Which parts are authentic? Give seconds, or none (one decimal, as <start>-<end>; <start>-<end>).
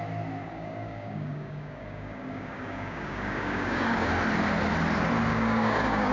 0.0-0.4; 4.1-5.3